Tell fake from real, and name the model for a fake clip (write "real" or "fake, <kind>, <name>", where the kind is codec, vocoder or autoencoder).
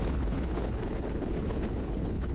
fake, codec, HILCodec